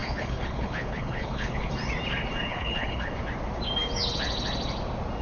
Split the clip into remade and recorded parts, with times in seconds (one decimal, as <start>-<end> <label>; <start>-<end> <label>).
0.0-1.7 remade; 1.7-2.5 recorded; 2.5-3.1 remade; 3.1-5.2 recorded